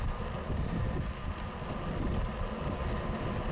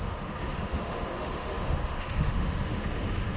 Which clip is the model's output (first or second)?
second